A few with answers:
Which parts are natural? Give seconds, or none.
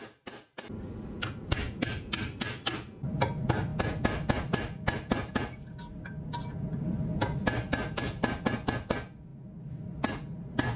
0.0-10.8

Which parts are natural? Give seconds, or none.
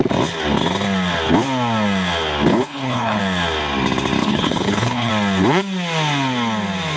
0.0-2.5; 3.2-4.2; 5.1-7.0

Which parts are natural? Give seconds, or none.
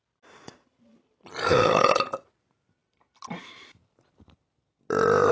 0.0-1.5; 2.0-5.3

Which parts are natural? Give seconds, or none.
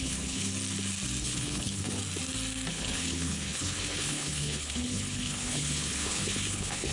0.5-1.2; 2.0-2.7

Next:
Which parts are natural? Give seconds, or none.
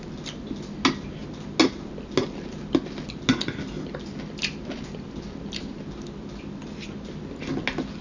0.0-8.0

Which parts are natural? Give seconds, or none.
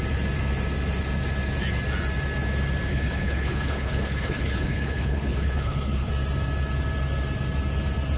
0.0-2.9; 6.1-8.2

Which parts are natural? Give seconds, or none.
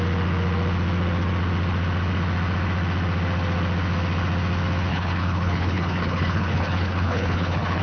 0.0-4.9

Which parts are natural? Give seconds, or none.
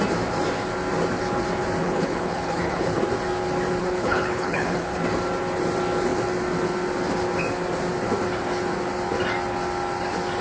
0.0-1.8; 3.0-3.8; 5.0-10.4